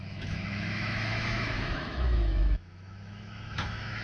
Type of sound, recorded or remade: remade